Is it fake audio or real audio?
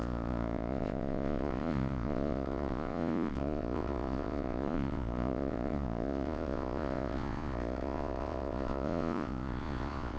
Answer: fake